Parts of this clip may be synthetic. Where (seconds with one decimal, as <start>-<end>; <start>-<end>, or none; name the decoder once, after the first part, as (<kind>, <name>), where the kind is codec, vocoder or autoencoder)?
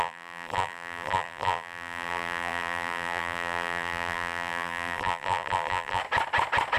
0.0-6.0 (vocoder, BigVGAN v2)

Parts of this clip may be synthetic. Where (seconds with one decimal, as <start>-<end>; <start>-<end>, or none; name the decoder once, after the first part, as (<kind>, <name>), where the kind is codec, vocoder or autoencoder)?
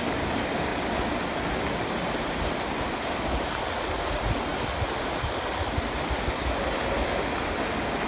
0.7-2.5 (vocoder, BigVGAN v2)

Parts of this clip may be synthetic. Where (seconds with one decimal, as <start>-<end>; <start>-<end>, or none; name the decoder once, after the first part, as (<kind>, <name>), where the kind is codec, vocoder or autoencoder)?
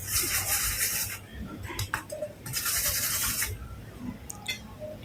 0.0-0.8 (vocoder, BigVGAN v2); 1.3-3.3